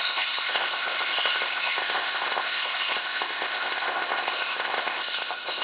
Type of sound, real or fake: fake